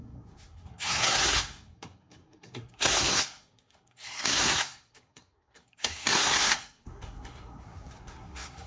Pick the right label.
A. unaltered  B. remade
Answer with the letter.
B